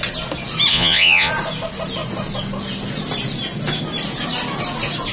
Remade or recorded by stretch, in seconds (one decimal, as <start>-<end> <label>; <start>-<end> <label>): 0.0-0.7 recorded; 0.7-1.3 remade; 1.3-5.1 recorded